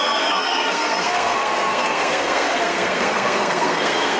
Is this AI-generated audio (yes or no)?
yes